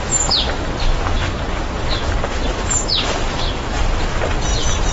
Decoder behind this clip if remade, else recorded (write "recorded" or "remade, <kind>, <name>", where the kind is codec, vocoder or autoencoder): recorded